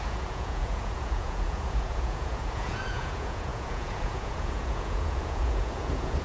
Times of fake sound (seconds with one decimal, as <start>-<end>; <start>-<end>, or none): 0.0-6.2